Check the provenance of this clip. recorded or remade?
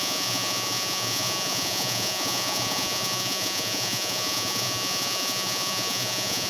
remade